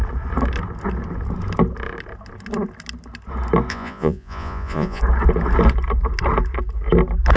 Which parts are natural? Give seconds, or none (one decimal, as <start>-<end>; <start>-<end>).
0.0-3.7; 5.0-7.4